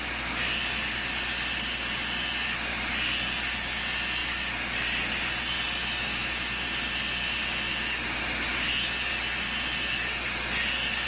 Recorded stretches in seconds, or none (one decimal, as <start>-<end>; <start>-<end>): 0.0-11.1